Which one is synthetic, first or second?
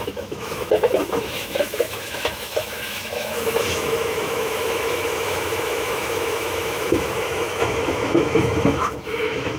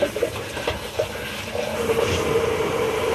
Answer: first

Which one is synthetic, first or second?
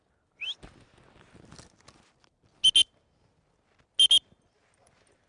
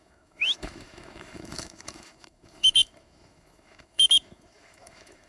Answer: second